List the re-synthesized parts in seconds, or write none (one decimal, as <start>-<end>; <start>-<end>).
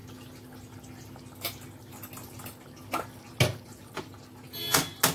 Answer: 3.5-4.1